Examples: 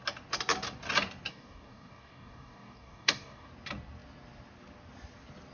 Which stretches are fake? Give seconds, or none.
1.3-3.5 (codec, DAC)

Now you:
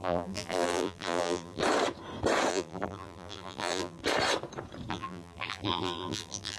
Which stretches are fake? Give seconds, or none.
0.0-1.6 (vocoder, BigVGAN v2); 2.5-4.0; 4.9-6.6

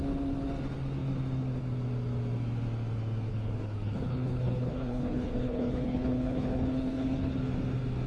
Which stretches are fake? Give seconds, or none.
3.3-7.4 (codec, HILCodec)

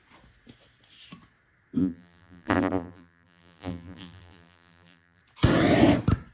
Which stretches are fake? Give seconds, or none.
1.8-5.2 (vocoder, BigVGAN v2)

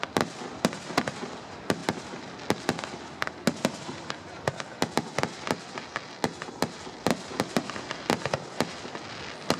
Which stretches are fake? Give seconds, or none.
none